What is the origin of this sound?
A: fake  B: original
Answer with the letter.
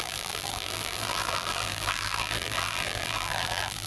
A